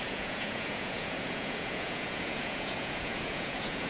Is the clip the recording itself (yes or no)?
no